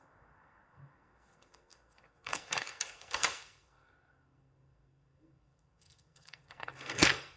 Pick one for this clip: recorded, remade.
remade